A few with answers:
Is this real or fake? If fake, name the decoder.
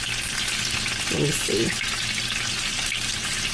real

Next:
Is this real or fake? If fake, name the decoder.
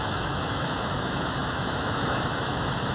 fake, autoencoder, DAC-VAE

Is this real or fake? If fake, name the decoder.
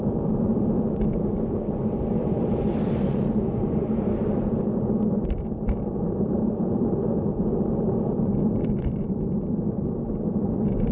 fake, vocoder, BigVGAN v2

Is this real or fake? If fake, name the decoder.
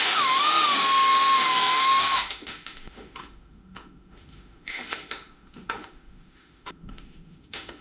fake, autoencoder, DAC-VAE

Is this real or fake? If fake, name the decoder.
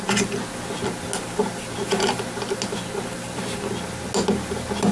real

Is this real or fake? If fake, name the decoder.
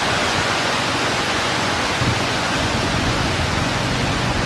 fake, vocoder, Vocos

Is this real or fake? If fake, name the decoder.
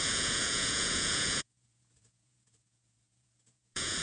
fake, vocoder, Vocos